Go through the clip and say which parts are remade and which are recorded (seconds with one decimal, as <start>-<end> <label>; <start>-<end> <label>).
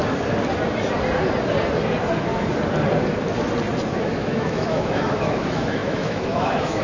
0.0-4.0 recorded; 4.0-6.8 remade